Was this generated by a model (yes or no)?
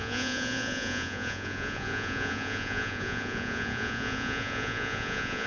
yes